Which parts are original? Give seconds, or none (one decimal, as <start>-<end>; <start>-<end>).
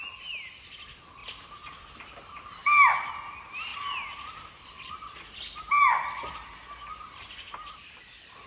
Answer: 0.0-1.2; 1.8-2.6; 3.1-8.5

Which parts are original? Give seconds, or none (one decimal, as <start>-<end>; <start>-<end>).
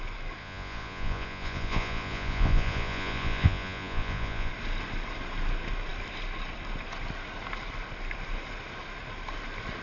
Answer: 0.0-0.4; 4.5-9.8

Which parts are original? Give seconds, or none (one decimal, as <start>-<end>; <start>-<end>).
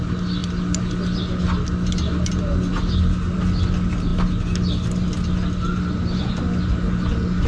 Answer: 0.0-7.5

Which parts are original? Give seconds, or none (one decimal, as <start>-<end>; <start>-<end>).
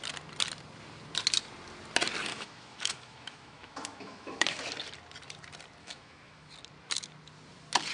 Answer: 0.0-2.3; 4.6-5.8; 6.5-7.9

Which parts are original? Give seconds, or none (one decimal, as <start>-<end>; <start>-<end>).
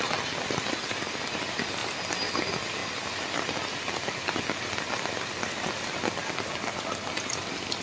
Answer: 0.0-7.8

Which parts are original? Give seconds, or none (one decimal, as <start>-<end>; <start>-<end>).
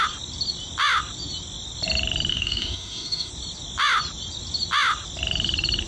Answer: 0.0-2.3; 3.3-5.9